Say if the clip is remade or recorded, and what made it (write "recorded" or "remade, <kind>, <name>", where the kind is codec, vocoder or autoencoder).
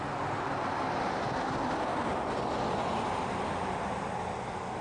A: recorded